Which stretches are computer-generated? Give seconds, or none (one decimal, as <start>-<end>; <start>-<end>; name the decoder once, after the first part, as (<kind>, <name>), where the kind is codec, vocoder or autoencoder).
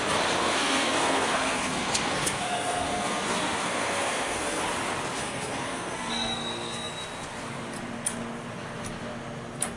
0.4-4.6 (codec, SNAC); 5.2-6.9